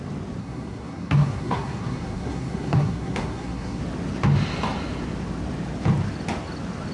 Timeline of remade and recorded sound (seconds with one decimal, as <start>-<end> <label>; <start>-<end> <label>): 0.0-0.4 recorded; 0.4-3.8 remade; 3.8-6.9 recorded